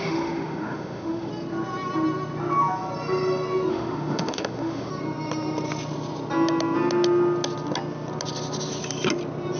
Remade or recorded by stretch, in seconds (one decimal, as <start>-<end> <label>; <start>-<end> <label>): 0.0-1.3 remade; 1.3-3.7 recorded; 3.7-4.9 remade; 4.9-9.6 recorded